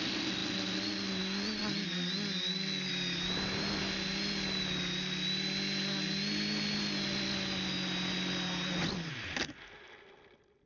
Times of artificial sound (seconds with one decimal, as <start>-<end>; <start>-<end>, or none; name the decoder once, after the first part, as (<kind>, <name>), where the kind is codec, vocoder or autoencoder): none